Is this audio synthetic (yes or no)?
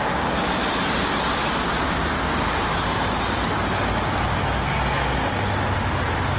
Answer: no